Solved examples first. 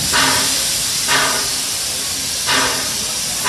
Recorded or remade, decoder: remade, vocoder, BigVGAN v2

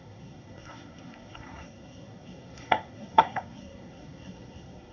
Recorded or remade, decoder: remade, codec, SNAC